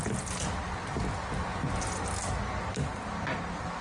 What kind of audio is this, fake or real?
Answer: real